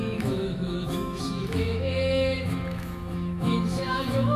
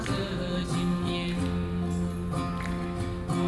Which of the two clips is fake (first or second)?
first